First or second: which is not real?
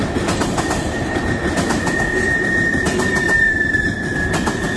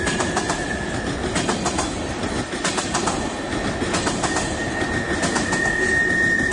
first